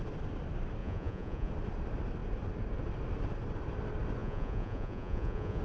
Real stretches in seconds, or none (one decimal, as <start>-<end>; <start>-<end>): 0.0-0.8; 1.5-4.2